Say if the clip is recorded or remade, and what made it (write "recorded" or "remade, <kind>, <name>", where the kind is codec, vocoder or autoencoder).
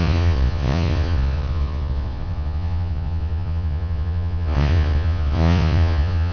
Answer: remade, vocoder, Vocos